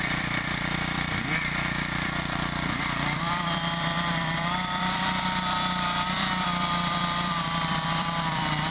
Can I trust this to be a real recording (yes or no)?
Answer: no